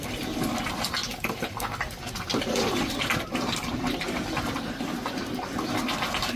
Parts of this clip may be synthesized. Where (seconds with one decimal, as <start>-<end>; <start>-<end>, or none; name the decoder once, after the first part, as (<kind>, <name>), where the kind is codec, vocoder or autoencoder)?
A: none